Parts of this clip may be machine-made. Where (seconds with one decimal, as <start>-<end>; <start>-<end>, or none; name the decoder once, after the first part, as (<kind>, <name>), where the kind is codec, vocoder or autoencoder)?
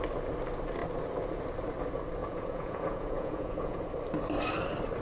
2.2-3.8 (vocoder, Vocos)